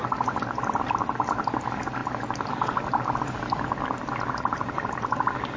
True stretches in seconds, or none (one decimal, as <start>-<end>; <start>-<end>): 0.0-5.6